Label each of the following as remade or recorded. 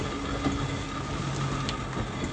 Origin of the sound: recorded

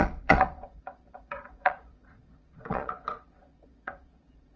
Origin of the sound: remade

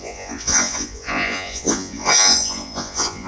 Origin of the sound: remade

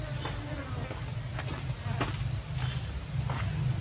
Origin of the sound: recorded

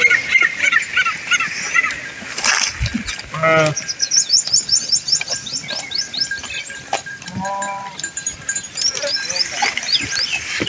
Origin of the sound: recorded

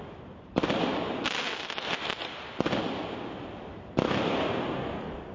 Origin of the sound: recorded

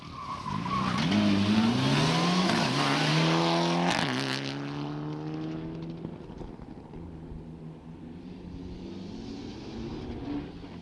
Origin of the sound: recorded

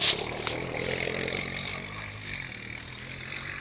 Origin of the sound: recorded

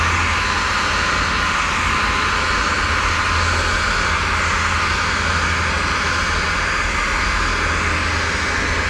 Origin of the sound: recorded